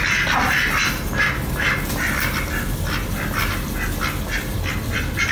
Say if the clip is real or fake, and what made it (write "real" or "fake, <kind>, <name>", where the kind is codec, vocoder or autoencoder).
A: real